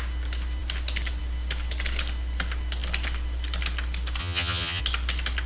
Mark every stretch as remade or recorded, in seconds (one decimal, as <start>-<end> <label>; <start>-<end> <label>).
0.0-4.2 recorded; 4.2-4.8 remade; 4.8-5.5 recorded